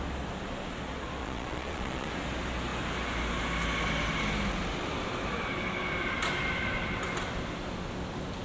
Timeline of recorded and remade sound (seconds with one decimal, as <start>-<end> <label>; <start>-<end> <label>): 0.0-1.2 recorded; 1.2-2.1 remade; 2.1-8.4 recorded